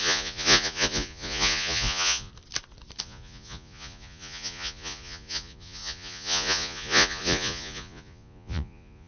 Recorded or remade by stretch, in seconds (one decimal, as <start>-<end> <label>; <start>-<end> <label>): 0.0-2.3 remade; 2.3-3.0 recorded; 3.0-9.1 remade